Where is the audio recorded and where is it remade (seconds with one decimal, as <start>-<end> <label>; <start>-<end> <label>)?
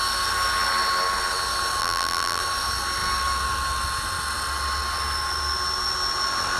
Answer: 0.0-1.8 recorded; 1.8-2.4 remade; 2.4-6.6 recorded